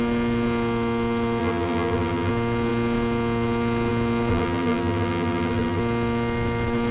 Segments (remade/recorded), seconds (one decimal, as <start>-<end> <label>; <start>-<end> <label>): 0.0-1.4 recorded; 1.4-2.3 remade; 2.3-4.3 recorded; 4.3-5.8 remade; 5.8-6.9 recorded